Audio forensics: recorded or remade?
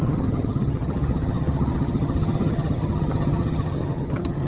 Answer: remade